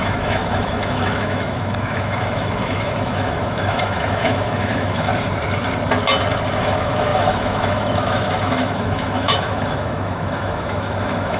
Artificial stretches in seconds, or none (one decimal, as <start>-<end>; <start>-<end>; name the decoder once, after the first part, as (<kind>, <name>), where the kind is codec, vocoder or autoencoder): 0.0-5.1 (autoencoder, DAC-VAE); 6.6-11.4